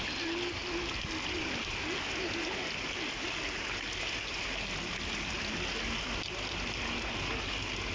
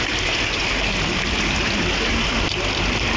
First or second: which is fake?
second